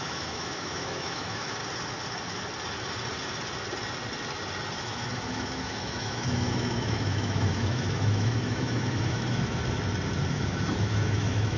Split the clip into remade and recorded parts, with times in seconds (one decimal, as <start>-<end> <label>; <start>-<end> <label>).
0.0-1.6 remade; 1.6-4.8 recorded; 4.8-9.6 remade; 9.6-10.3 recorded; 10.3-11.6 remade